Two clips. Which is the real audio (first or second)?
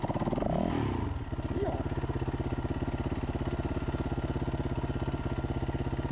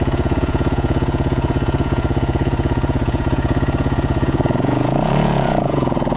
first